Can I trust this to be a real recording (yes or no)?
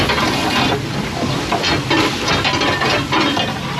yes